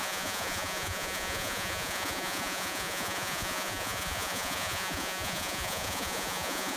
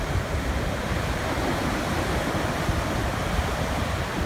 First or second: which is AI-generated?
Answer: first